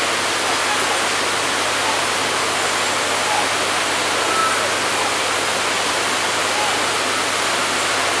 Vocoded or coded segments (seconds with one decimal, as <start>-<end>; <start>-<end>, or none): none